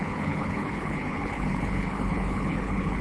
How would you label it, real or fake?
fake